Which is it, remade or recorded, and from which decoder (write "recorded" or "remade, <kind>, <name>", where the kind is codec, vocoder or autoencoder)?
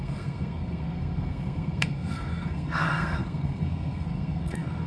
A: remade, codec, SNAC